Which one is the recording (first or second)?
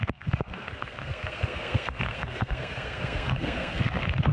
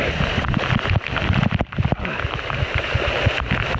second